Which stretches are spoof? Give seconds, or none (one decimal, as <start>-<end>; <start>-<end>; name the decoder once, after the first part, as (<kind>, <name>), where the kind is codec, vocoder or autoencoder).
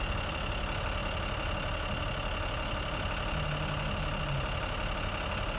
none